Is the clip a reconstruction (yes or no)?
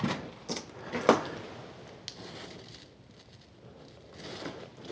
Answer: no